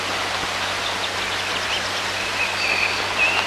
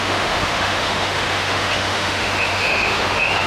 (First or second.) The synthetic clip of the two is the second